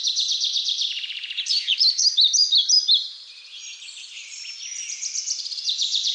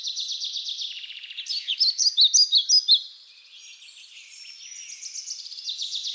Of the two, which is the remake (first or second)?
first